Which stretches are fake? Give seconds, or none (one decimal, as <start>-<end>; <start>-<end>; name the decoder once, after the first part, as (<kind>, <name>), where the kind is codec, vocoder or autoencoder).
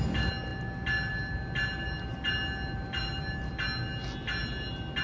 none